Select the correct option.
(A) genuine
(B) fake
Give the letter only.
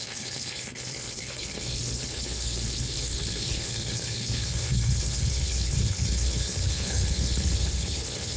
B